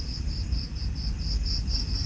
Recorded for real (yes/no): yes